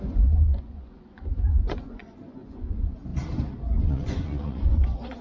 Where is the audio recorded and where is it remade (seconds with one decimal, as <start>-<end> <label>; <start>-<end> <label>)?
0.0-3.1 remade; 3.1-3.8 recorded; 3.8-5.2 remade